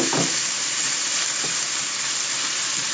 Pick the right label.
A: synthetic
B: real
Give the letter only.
A